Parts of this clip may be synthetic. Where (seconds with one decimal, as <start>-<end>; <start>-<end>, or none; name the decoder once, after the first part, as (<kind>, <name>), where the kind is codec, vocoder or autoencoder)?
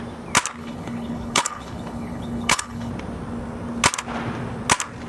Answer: 0.6-2.9 (codec, HILCodec)